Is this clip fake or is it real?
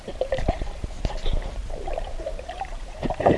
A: fake